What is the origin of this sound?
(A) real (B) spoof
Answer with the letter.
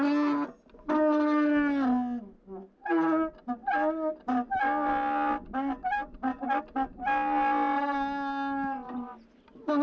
A